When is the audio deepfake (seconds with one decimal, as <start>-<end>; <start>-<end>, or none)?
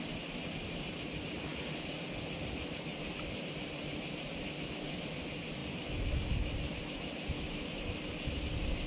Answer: none